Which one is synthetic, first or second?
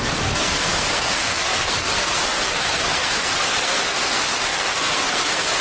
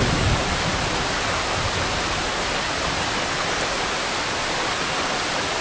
first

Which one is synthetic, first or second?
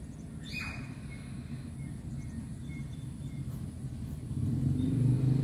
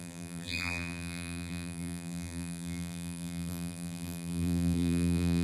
second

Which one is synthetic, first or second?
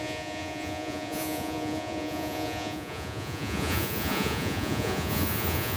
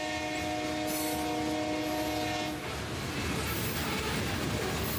first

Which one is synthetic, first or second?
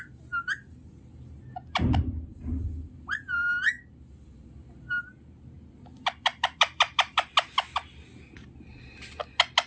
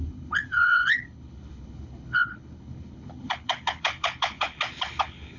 second